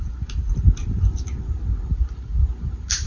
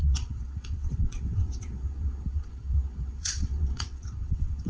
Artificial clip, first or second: second